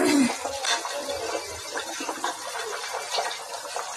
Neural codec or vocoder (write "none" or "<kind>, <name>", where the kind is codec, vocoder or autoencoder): vocoder, BigVGAN v2